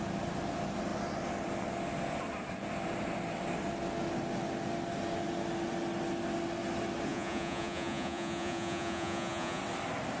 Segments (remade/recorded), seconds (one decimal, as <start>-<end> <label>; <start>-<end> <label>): 0.0-7.1 recorded; 7.1-9.6 remade; 9.6-10.2 recorded